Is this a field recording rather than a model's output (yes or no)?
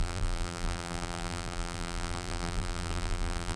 no